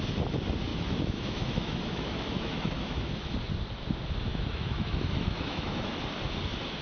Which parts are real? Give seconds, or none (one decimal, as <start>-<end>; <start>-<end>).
0.0-0.7; 3.3-4.3; 6.0-6.8